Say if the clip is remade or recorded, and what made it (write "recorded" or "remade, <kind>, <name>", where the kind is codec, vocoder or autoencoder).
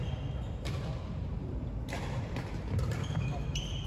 recorded